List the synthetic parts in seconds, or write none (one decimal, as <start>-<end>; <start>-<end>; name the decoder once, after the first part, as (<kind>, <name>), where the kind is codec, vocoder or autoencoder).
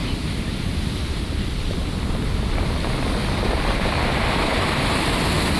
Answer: none